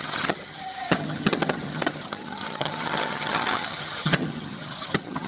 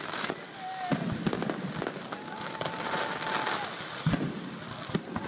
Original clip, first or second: second